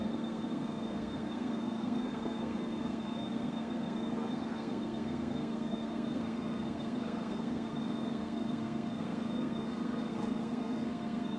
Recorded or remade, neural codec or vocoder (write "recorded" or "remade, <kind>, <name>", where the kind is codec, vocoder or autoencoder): remade, codec, SNAC